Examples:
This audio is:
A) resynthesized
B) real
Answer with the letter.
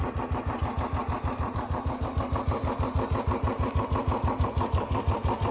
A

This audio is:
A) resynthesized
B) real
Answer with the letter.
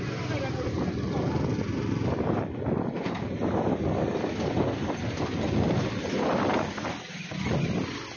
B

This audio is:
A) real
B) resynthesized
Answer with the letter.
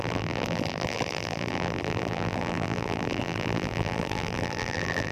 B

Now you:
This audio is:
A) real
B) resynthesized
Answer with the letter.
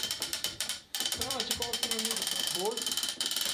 B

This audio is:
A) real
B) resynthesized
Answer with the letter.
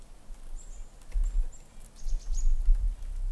A